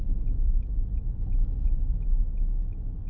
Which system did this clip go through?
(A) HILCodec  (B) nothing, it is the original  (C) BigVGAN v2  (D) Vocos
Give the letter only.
B